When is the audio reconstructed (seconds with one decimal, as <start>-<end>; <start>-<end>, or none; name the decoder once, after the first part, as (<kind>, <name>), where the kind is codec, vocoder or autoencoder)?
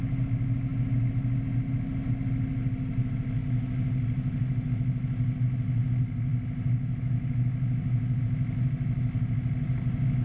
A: none